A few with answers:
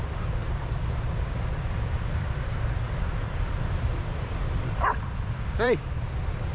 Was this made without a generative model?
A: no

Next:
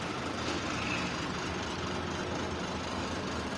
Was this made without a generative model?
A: yes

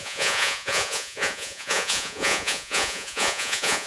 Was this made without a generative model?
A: no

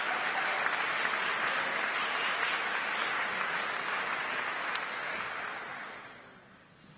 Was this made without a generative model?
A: yes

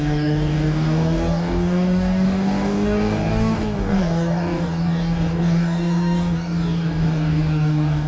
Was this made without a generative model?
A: no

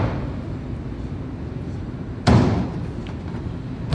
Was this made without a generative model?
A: yes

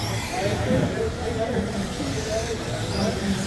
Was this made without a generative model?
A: no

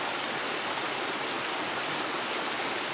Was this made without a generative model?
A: yes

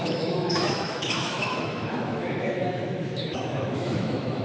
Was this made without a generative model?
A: no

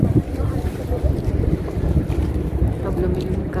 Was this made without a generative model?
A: no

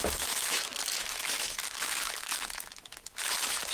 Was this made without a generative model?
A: no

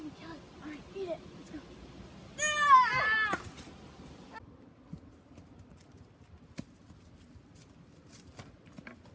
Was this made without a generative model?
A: yes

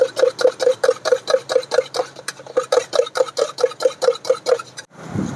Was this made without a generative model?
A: yes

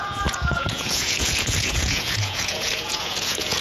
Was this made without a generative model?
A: no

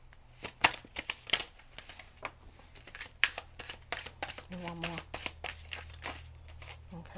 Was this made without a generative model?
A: yes